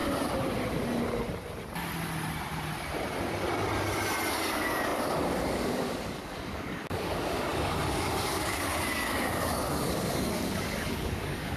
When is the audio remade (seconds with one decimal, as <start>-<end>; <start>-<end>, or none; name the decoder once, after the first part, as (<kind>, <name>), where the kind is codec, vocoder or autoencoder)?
4.3-11.6 (codec, DAC)